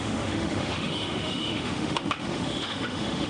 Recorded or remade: remade